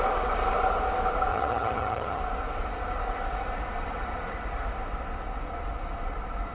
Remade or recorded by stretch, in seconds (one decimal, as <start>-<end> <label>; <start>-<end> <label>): 0.0-1.3 recorded; 1.3-2.2 remade; 2.2-6.5 recorded